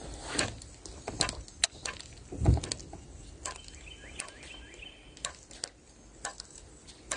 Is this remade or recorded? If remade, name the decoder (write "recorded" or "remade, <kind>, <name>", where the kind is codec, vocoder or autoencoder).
recorded